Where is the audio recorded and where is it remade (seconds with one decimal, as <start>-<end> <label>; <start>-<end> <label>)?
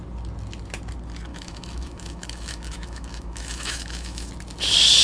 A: 0.0-1.3 recorded; 1.3-4.3 remade; 4.3-5.0 recorded